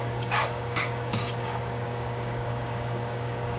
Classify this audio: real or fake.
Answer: fake